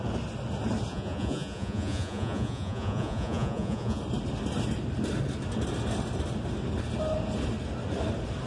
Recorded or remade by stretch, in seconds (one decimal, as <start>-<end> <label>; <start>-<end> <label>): 0.0-0.9 recorded; 0.9-4.0 remade; 4.0-8.5 recorded